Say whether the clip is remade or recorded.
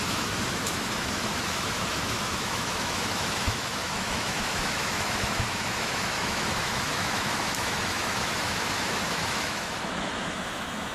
remade